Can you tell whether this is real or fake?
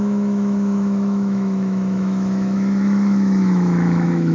fake